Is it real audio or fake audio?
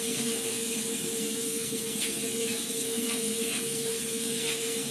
fake